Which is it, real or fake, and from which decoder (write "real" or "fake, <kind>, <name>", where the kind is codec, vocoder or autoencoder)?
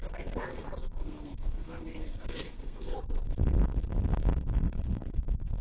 fake, codec, SNAC